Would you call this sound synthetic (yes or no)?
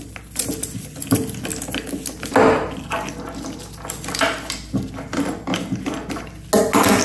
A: no